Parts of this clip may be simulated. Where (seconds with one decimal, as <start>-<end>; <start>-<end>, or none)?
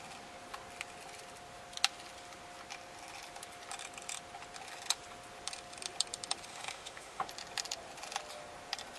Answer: 6.5-7.3